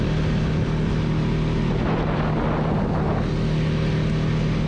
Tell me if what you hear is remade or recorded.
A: recorded